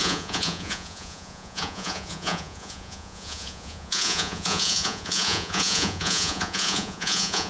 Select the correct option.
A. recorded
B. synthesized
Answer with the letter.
B